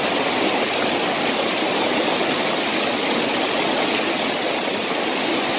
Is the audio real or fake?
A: real